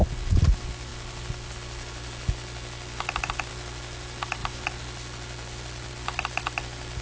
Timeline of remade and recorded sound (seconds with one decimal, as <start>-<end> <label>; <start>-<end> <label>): 0.0-7.0 recorded